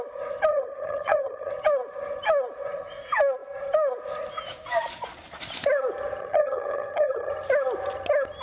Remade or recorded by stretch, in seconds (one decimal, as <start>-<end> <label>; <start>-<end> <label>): 0.0-0.5 recorded; 0.5-1.5 remade; 1.5-6.2 recorded; 6.2-7.3 remade; 7.3-8.4 recorded